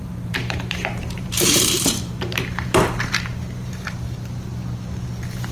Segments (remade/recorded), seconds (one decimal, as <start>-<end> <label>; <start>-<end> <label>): 0.0-4.5 remade; 4.5-5.5 recorded